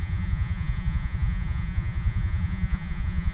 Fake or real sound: fake